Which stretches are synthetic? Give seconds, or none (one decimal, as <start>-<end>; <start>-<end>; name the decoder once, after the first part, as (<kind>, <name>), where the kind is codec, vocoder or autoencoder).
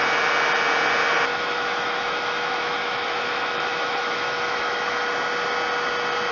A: 1.3-5.1 (autoencoder, DAC-VAE)